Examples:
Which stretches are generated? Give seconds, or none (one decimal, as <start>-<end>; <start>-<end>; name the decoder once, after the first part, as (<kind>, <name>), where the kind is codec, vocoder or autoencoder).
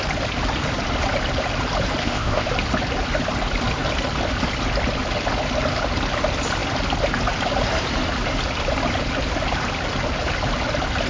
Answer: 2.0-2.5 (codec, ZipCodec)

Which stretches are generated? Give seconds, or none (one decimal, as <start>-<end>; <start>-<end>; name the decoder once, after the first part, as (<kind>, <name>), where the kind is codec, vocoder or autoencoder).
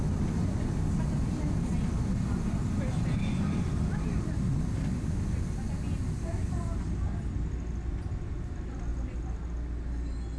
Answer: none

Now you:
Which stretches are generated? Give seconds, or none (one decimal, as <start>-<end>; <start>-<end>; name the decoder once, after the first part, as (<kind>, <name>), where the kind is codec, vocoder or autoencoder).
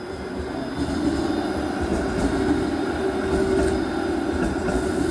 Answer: none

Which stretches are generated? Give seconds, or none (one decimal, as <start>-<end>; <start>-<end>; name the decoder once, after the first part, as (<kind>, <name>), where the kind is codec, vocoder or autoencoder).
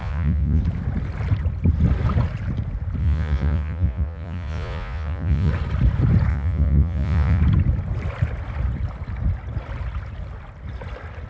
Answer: 0.0-0.6 (vocoder, Vocos); 3.0-5.5; 6.3-7.4